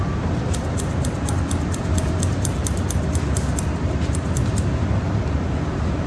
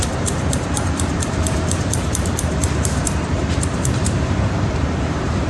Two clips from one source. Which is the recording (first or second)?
first